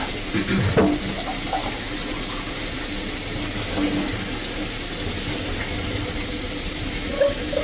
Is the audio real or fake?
real